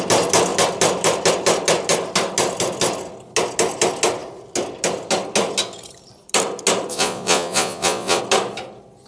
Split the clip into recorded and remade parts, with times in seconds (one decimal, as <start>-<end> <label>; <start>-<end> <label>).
0.0-6.9 recorded; 6.9-8.2 remade; 8.2-9.1 recorded